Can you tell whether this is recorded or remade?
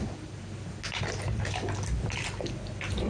recorded